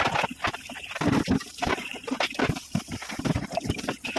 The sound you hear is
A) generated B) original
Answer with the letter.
A